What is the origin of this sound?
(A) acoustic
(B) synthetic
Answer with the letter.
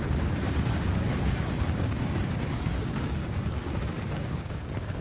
B